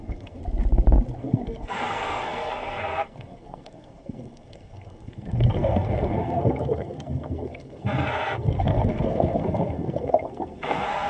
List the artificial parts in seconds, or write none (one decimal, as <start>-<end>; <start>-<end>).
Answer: 0.0-0.4; 1.2-11.1